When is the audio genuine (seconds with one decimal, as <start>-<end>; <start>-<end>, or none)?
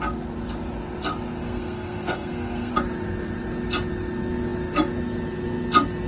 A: 0.0-1.4; 2.7-6.1